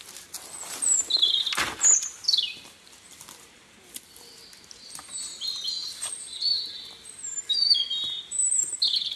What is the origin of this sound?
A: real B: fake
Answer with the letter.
A